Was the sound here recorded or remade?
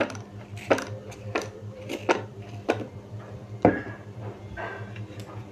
remade